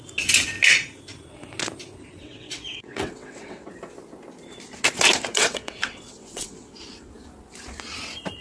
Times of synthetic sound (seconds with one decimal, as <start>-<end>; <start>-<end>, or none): 2.2-3.7; 5.3-7.1